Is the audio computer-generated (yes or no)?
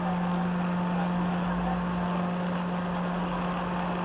no